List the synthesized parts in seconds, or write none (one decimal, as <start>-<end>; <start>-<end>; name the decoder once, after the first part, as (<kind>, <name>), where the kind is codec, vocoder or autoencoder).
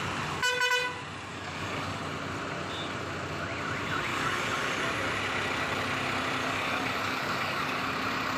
1.3-2.0 (codec, DAC); 4.1-4.8; 6.4-7.9